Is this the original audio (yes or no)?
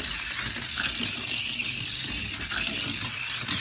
yes